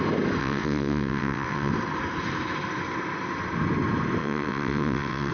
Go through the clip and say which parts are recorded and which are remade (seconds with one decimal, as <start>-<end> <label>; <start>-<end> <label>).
0.0-0.4 recorded; 0.4-1.7 remade; 1.7-4.2 recorded; 4.2-5.3 remade